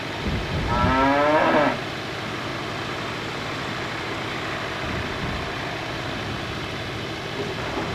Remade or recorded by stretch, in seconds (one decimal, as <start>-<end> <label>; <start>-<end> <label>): 0.0-2.5 recorded; 2.5-5.7 remade; 5.7-7.9 recorded